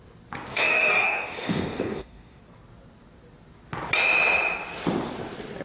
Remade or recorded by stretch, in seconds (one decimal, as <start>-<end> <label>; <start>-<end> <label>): 0.0-0.5 recorded; 0.5-2.4 remade; 2.4-5.6 recorded